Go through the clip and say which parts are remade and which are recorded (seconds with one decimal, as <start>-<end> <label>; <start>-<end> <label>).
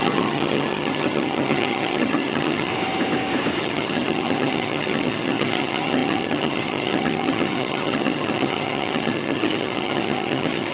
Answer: 0.0-2.7 remade; 2.7-3.6 recorded; 3.6-10.7 remade